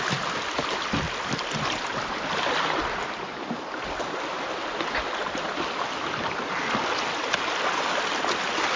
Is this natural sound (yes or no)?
yes